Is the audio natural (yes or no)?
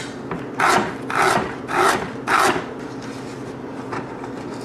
yes